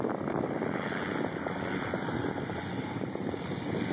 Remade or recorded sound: recorded